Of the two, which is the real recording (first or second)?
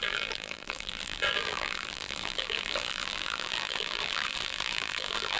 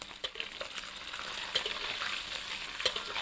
second